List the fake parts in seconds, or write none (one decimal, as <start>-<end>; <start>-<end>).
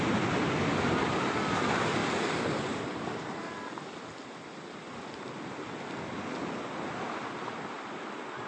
none